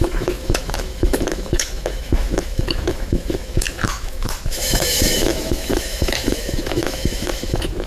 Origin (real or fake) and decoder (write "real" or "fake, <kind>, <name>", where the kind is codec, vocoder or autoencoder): fake, autoencoder, DAC-VAE